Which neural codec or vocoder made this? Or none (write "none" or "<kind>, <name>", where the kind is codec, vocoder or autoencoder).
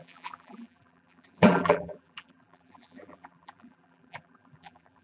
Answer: vocoder, BigVGAN v2